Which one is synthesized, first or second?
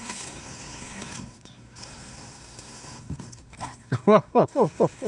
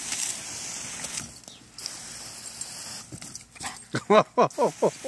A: first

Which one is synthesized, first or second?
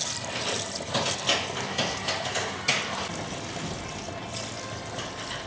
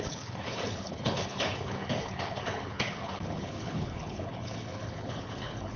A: second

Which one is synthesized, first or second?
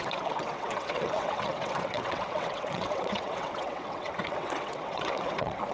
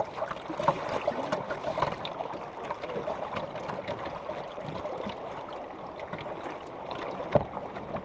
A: first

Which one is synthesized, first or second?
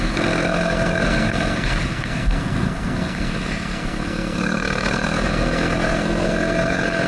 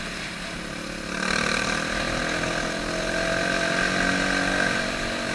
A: first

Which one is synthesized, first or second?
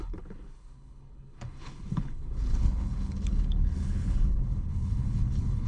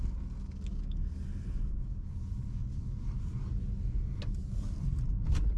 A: first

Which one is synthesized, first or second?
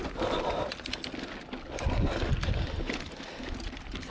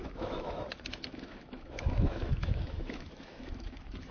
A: second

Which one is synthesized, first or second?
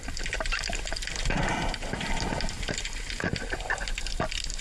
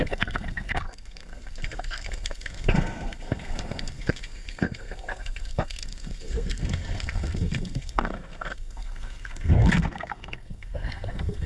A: second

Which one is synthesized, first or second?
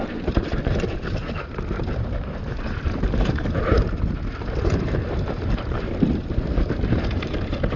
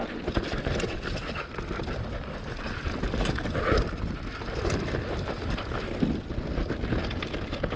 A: first